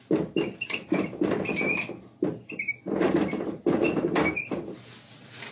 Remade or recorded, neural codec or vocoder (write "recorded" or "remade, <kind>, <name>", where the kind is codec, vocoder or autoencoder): recorded